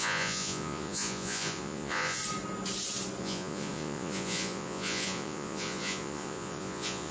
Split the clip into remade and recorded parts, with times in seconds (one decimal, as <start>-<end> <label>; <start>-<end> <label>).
0.0-2.2 remade; 2.2-3.2 recorded; 3.2-7.1 remade